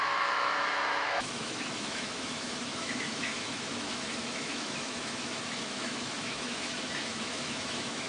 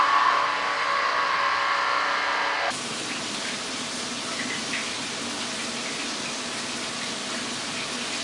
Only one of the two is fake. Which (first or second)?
first